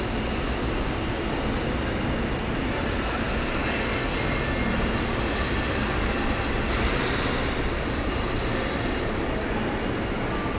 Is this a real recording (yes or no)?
yes